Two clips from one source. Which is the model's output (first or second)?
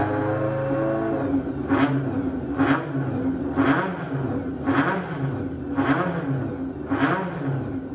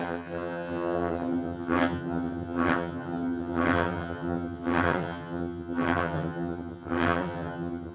second